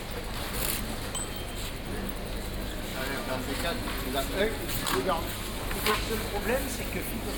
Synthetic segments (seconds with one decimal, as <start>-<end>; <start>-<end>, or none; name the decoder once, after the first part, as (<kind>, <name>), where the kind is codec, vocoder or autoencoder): none